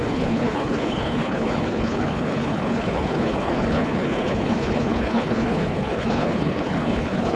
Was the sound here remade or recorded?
remade